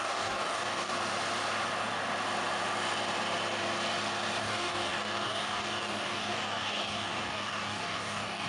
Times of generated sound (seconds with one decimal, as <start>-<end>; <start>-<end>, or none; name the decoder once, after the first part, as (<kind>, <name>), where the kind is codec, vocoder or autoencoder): 0.0-0.9 (codec, DAC); 4.4-8.5